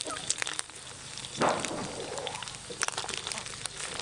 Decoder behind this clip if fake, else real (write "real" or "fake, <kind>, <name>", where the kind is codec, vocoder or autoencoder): real